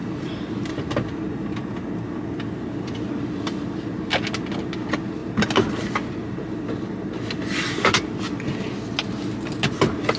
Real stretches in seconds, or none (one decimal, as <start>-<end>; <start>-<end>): 0.0-10.2